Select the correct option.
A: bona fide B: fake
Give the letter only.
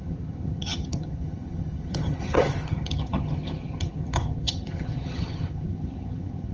B